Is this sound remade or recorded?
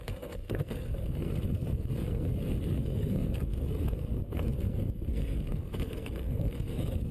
remade